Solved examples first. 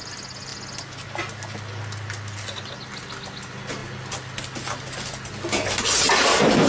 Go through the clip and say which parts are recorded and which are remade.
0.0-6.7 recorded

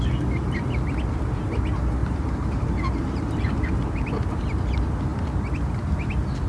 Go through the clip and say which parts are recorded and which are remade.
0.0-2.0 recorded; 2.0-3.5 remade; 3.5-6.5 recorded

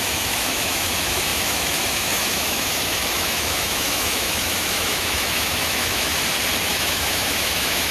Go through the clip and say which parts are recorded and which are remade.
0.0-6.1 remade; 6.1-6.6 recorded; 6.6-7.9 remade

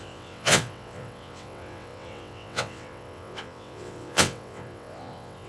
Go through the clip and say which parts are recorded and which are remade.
0.0-5.5 remade

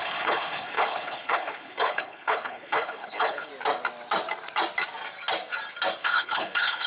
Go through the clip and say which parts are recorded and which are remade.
0.0-3.5 remade; 3.5-6.0 recorded; 6.0-6.9 remade

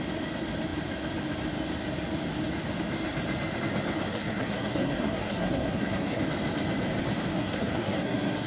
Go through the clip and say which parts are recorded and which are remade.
0.0-4.1 recorded; 4.1-6.2 remade; 6.2-7.3 recorded; 7.3-8.5 remade

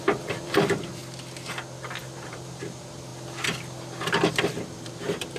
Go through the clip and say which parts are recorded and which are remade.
0.0-1.0 remade; 1.0-2.0 recorded; 2.0-3.1 remade; 3.1-4.3 recorded; 4.3-5.4 remade

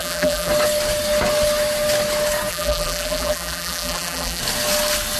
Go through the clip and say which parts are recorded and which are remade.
0.0-0.5 remade; 0.5-2.5 recorded; 2.5-4.4 remade; 4.4-5.2 recorded